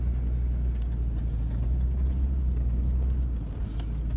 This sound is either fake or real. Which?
real